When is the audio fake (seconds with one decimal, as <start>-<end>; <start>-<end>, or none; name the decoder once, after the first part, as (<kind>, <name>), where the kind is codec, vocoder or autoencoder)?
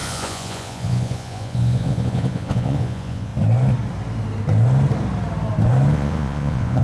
0.0-3.3 (vocoder, Vocos); 5.9-6.8